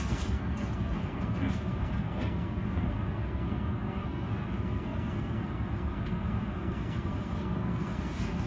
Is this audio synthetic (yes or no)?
yes